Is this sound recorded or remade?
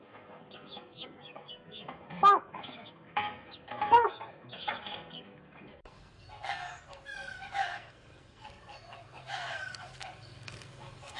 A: remade